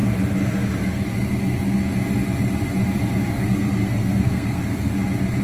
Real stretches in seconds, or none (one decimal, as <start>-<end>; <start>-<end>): 0.0-3.3; 4.9-5.4

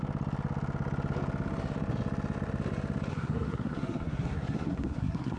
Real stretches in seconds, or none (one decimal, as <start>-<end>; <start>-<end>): 0.0-3.1

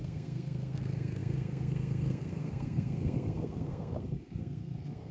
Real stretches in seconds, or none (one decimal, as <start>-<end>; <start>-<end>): none

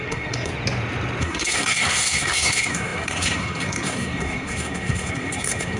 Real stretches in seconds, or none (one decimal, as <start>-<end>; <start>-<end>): 0.5-1.2

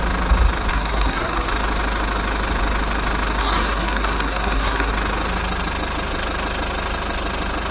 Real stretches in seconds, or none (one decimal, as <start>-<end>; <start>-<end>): 0.0-0.7; 1.5-3.4; 4.9-7.7

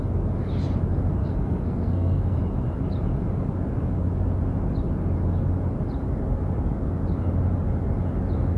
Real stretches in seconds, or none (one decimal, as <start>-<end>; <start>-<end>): 0.0-1.2; 2.4-8.6